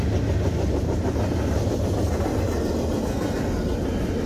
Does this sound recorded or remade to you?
recorded